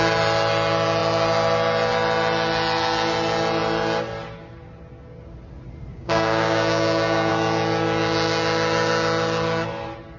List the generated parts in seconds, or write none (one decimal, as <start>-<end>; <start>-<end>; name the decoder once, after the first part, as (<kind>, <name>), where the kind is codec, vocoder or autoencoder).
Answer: 5.9-7.3 (codec, DAC)

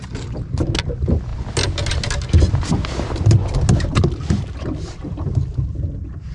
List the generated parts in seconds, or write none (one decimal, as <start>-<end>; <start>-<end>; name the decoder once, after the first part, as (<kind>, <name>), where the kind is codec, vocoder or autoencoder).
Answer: none

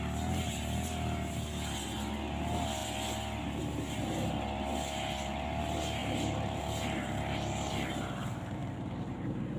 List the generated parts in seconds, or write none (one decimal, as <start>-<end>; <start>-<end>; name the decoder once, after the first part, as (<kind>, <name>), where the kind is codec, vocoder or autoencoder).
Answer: 6.0-6.6 (vocoder, BigVGAN v2); 8.6-9.6

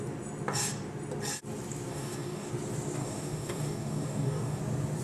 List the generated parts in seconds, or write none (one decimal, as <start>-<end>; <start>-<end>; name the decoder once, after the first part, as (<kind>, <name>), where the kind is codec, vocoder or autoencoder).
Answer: 1.9-2.5 (codec, DAC); 3.0-4.6

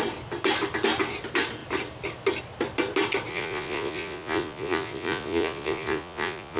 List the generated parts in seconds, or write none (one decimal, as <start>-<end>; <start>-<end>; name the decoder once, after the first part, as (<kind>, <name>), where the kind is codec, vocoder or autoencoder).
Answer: 3.3-6.6 (vocoder, Vocos)

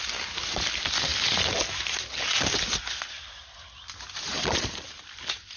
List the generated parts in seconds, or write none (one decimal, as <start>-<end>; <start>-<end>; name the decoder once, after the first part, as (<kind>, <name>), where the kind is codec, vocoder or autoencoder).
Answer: none

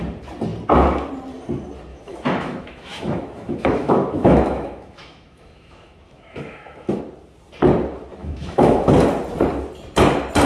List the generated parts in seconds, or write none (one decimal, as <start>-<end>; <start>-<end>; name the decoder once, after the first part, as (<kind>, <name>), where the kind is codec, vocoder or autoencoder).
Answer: 1.9-7.0 (autoencoder, DAC-VAE); 8.2-8.9

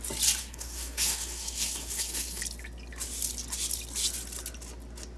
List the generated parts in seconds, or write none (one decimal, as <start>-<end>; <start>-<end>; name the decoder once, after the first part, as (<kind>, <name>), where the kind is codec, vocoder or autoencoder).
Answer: 0.4-2.4 (codec, SNAC)